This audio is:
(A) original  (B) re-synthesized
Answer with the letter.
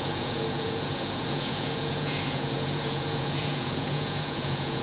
B